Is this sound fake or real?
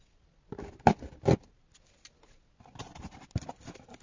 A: real